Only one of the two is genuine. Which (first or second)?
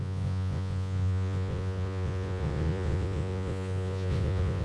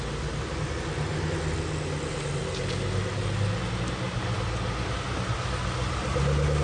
second